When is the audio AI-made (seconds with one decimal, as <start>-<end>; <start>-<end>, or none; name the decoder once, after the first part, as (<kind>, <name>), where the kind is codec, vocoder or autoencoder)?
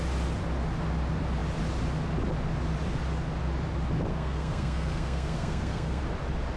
4.1-6.0 (codec, SNAC)